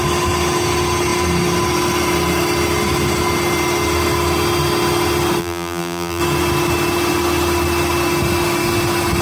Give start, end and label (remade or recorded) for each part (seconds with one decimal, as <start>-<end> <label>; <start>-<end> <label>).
0.0-5.4 recorded; 5.4-6.2 remade; 6.2-9.2 recorded